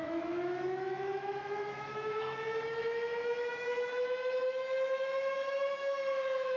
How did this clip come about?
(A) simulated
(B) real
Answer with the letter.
A